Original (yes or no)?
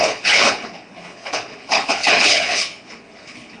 no